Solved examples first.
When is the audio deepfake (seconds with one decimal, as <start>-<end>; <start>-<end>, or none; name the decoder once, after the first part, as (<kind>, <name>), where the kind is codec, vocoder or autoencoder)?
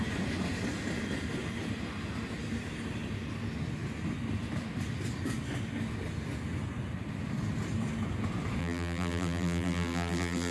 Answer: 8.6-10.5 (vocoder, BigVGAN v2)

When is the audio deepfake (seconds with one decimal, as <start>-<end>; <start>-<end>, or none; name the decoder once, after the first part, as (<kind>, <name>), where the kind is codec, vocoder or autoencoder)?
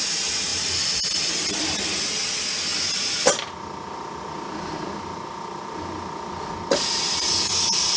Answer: none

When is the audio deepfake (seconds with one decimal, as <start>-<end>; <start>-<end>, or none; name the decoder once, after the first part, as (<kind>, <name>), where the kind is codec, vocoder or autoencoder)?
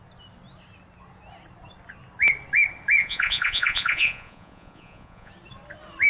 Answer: 3.0-5.3 (vocoder, Vocos)